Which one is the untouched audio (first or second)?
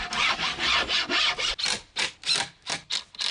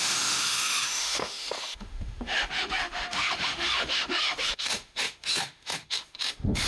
first